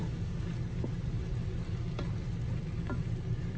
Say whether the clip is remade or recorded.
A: recorded